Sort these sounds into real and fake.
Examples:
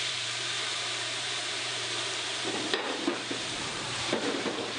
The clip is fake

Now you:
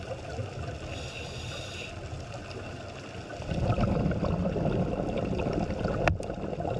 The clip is real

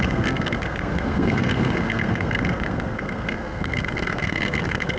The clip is fake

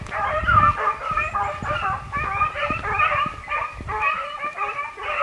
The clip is real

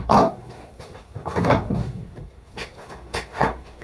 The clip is fake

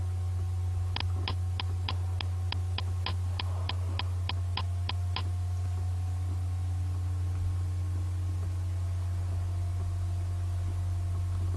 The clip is real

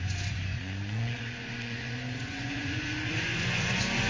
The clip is fake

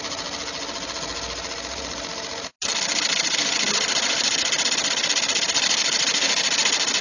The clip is real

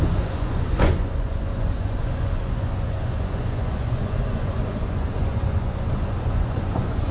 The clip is fake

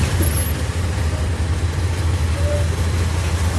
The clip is real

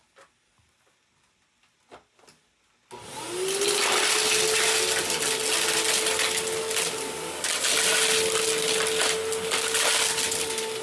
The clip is real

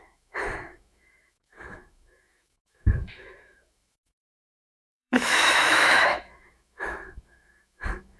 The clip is fake